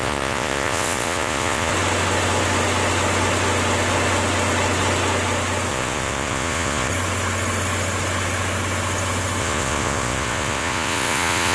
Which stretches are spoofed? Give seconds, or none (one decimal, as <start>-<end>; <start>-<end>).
0.0-1.7; 5.7-6.9; 9.4-11.5